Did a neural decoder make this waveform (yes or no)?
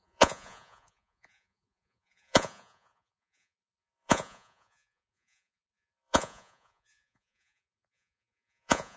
yes